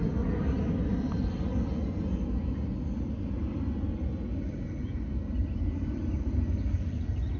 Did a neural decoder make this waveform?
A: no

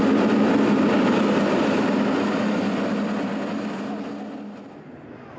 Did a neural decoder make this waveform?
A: no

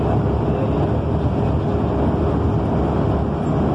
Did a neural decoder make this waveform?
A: no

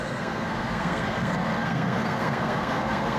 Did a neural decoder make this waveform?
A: yes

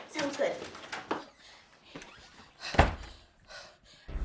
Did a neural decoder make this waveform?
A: no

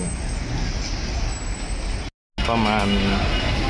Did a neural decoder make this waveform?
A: no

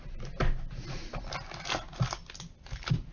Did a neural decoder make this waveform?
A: no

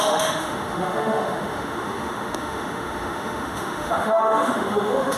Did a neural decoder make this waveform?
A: yes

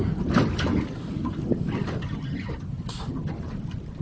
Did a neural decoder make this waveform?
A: no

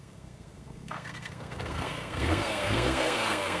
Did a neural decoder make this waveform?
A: yes